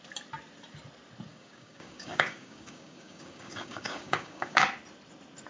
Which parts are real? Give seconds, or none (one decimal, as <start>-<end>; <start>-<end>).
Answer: 0.0-1.3; 4.6-5.5